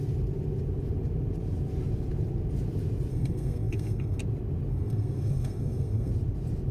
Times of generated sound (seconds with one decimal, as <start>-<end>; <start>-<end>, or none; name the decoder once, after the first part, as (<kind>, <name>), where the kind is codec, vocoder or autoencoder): 3.1-4.2 (codec, SNAC); 4.7-6.1